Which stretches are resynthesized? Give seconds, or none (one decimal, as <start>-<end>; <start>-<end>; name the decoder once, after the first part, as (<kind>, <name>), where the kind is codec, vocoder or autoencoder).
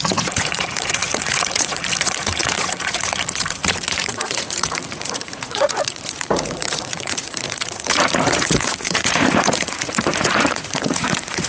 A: 0.0-11.5 (vocoder, Vocos)